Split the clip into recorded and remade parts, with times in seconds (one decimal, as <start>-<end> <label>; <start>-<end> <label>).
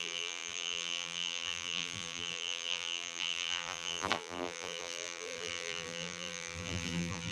0.0-7.3 remade